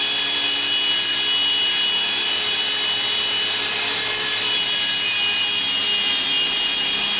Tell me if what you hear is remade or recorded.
recorded